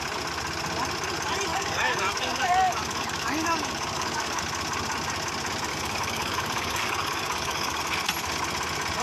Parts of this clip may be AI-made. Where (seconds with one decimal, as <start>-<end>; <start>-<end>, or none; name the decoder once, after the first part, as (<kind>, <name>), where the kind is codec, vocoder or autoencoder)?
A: 1.5-4.4 (codec, DAC); 5.7-7.8